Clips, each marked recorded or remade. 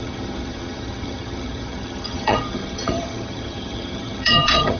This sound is remade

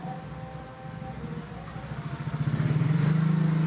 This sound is recorded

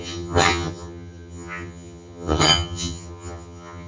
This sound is remade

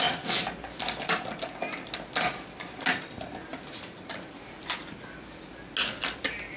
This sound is recorded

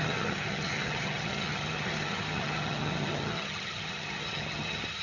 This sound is remade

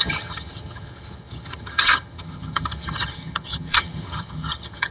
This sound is remade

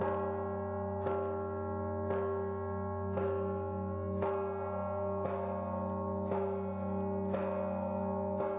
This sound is recorded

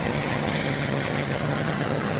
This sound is remade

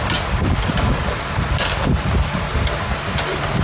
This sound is recorded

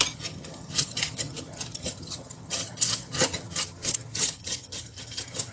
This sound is remade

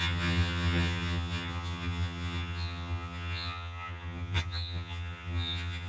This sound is remade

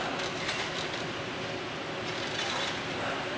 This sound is recorded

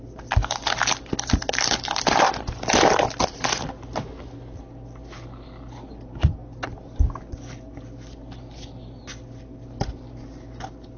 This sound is recorded